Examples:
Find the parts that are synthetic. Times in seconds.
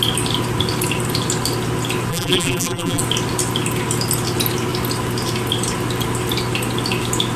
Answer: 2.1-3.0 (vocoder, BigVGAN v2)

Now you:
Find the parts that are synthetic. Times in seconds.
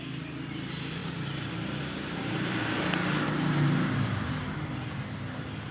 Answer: 1.0-4.4 (vocoder, BigVGAN v2)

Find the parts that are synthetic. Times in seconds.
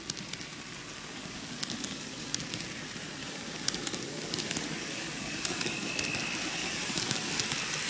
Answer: 0.5-2.4 (codec, DAC); 3.2-5.9; 6.6-7.3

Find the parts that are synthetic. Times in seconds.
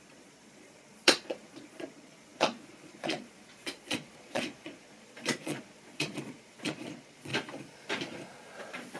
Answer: 0.0-7.3 (vocoder, Vocos); 8.6-9.0